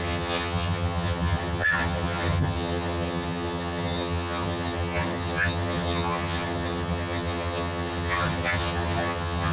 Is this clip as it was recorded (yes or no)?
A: no